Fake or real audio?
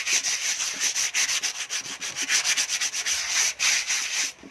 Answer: real